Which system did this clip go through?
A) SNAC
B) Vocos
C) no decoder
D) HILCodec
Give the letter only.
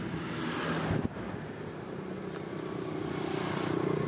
C